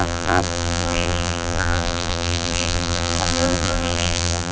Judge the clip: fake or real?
fake